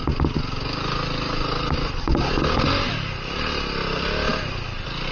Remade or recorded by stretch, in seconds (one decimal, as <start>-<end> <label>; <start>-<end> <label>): 0.0-5.1 recorded